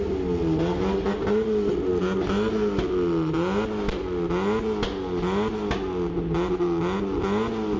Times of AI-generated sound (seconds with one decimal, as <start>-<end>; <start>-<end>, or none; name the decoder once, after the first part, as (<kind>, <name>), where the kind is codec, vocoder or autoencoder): none